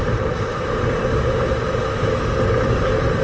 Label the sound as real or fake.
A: real